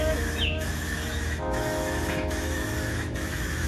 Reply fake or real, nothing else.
fake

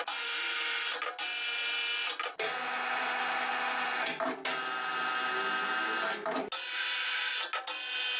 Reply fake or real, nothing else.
real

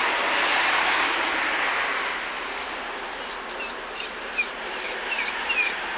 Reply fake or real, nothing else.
real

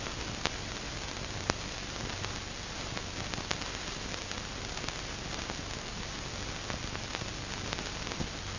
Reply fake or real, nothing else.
real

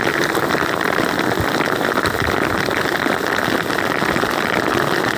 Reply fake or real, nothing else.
real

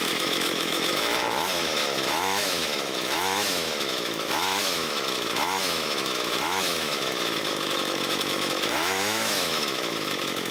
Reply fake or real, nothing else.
fake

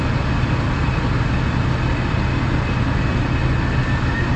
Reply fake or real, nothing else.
real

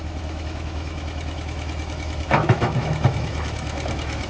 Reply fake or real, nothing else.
fake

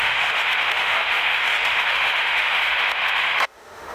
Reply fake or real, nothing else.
fake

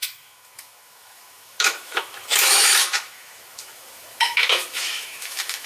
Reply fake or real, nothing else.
fake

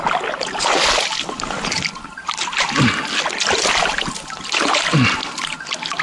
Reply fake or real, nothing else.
real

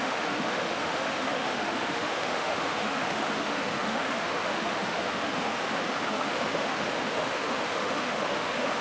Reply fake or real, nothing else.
fake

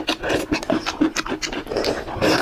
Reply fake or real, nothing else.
real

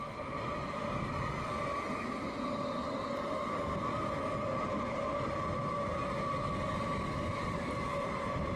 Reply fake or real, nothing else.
real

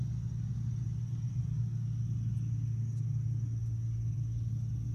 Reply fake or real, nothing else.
real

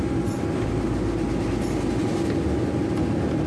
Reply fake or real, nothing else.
real